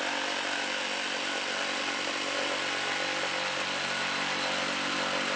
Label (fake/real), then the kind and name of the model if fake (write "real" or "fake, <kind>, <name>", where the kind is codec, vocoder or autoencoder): real